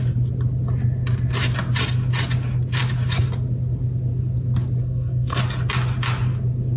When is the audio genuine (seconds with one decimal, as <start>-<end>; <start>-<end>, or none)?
0.0-4.8; 5.4-6.8